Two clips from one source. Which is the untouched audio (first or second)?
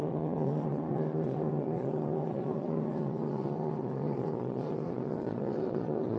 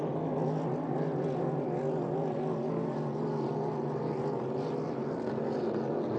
second